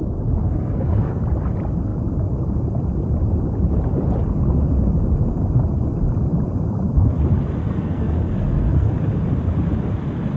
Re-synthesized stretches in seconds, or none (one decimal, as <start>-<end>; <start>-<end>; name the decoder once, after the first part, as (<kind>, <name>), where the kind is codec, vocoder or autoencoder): 0.4-1.2 (codec, SNAC); 7.6-8.9